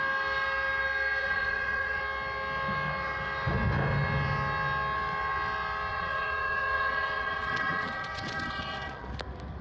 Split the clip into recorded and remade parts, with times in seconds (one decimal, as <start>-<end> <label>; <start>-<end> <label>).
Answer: 0.0-1.2 recorded; 1.2-2.0 remade; 2.0-5.9 recorded; 5.9-9.1 remade; 9.1-9.6 recorded